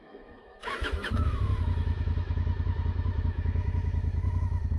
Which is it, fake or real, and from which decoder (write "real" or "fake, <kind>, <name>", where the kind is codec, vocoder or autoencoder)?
fake, autoencoder, DAC-VAE